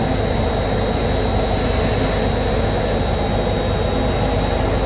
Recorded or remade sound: recorded